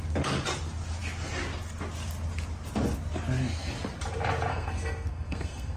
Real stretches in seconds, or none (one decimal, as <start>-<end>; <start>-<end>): 0.0-4.5